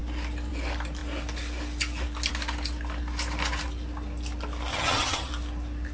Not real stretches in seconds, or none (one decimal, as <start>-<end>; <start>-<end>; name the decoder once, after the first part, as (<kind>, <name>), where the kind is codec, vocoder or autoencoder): 4.7-5.3 (vocoder, HiFi-GAN)